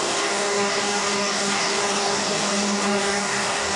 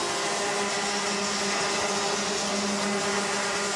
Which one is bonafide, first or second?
second